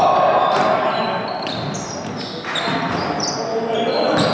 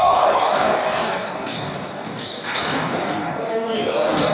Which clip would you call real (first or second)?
first